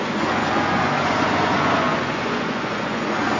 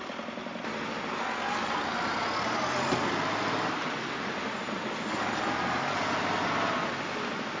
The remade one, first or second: first